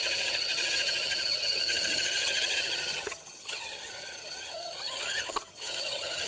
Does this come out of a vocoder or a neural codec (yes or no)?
yes